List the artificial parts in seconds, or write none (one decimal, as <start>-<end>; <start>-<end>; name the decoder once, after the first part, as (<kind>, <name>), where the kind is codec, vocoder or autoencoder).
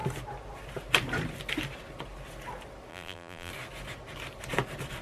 2.9-3.5 (vocoder, BigVGAN v2)